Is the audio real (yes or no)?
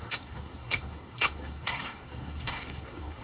no